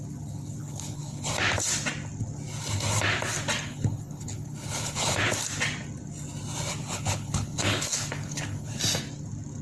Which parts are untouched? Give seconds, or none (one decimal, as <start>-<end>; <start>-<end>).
0.0-0.6; 1.3-3.6; 5.1-6.8; 8.8-9.6